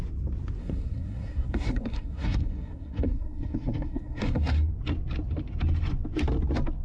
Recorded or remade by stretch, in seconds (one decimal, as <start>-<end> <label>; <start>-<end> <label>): 0.0-0.6 recorded; 0.6-4.7 remade; 4.7-6.8 recorded